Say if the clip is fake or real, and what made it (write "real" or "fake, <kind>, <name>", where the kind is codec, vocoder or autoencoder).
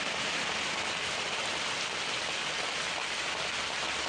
real